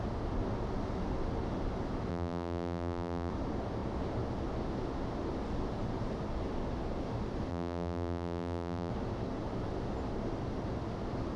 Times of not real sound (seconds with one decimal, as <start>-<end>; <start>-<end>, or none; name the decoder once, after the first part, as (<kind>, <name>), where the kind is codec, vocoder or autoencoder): 2.1-3.3 (vocoder, BigVGAN v2); 7.5-8.9